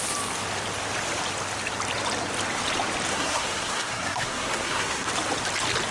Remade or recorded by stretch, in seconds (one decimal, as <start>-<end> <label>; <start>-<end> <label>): 0.0-3.1 recorded; 3.1-5.1 remade; 5.1-5.9 recorded